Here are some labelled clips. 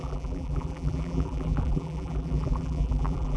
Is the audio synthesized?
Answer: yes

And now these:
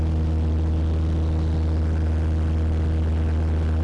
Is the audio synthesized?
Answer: no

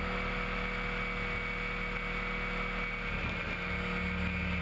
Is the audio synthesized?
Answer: no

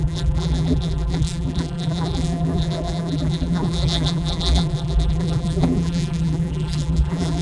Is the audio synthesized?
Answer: yes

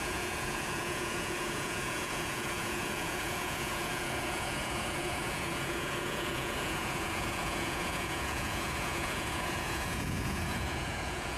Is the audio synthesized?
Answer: yes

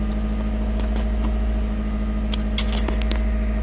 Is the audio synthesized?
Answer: no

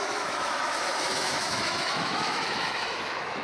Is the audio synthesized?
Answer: yes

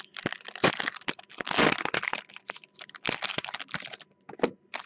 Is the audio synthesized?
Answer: yes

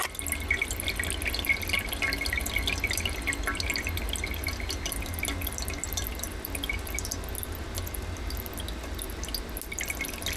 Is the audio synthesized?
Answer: no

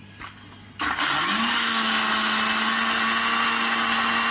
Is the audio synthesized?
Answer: no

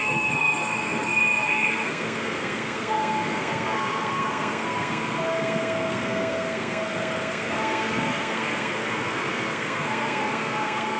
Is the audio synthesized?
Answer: yes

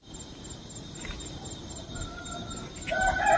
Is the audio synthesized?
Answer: no